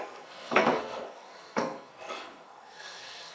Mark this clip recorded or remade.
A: remade